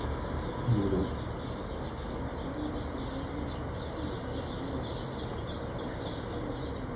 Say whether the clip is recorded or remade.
recorded